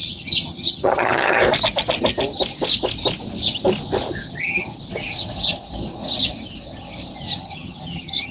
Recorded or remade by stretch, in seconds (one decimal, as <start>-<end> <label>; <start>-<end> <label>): 0.0-1.4 remade; 1.4-4.2 recorded; 4.2-4.8 remade; 4.8-7.4 recorded; 7.4-8.3 remade